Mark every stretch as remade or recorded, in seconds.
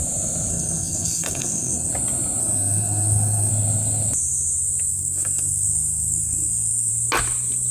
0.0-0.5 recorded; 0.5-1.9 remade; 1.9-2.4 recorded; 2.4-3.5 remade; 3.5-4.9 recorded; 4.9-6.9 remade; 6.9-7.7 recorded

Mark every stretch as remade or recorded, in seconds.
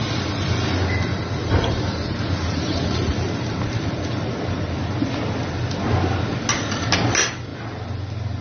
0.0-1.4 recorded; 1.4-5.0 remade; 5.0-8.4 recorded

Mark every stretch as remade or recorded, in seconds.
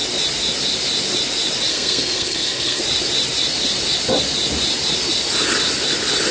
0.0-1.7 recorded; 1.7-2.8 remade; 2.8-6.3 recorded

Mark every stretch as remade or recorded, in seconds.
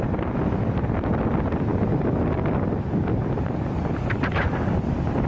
0.0-5.3 recorded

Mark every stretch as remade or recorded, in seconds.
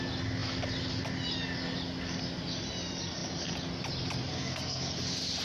0.0-4.3 recorded; 4.3-4.9 remade; 4.9-5.4 recorded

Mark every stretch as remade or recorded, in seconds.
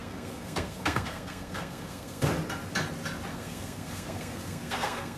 0.0-2.3 remade; 2.3-3.3 recorded; 3.3-5.2 remade